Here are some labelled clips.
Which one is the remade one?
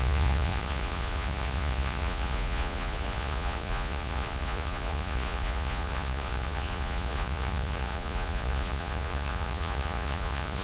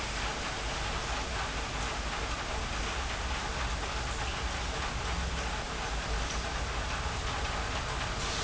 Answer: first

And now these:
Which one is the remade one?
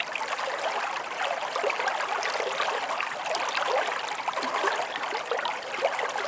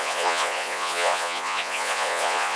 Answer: second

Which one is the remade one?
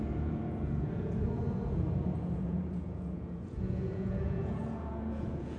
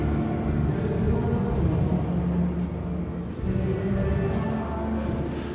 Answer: first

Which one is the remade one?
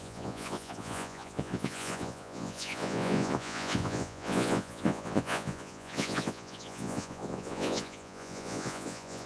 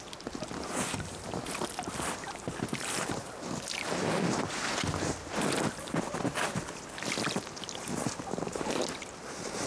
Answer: first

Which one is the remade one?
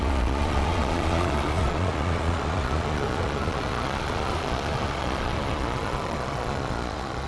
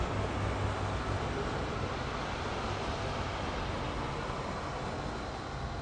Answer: first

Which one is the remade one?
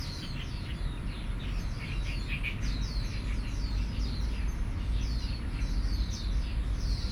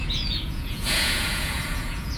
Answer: second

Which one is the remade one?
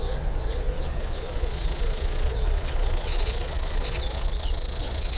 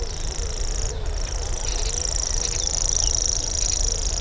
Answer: first